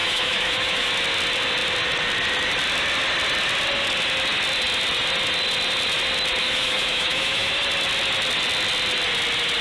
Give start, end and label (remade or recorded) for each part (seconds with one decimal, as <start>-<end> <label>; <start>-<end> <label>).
0.0-0.9 remade; 0.9-6.4 recorded; 6.4-7.5 remade; 7.5-9.6 recorded